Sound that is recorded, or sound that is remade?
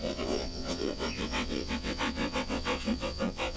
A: remade